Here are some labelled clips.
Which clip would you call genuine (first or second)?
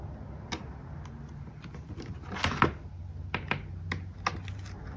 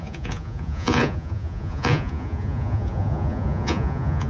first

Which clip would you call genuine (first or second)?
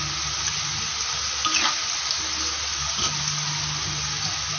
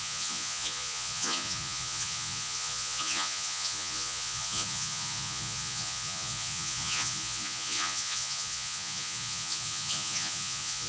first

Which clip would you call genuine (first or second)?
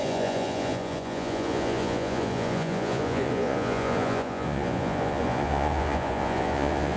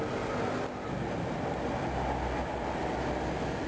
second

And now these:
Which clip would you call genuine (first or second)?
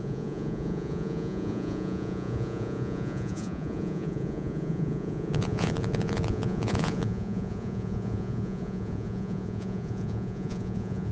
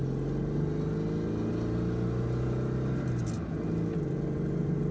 second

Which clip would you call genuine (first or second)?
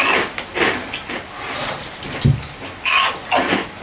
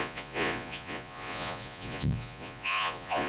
first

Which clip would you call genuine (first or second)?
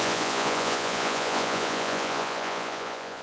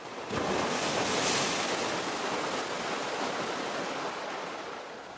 second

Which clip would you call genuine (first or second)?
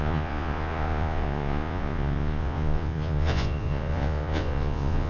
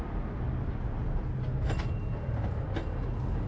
second